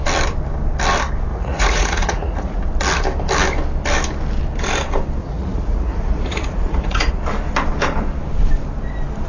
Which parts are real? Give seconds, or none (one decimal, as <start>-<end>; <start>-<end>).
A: 0.0-1.3; 2.6-5.2; 7.2-9.3